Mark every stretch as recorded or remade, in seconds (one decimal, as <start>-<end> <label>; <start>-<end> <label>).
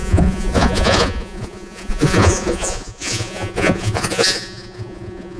0.0-5.4 remade